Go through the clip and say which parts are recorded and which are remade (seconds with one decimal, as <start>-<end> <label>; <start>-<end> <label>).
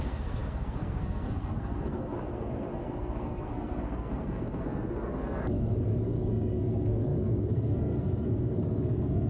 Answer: 0.0-9.3 remade